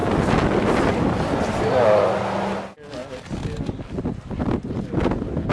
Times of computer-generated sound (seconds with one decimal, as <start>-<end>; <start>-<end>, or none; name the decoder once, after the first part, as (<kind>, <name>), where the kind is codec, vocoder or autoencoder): none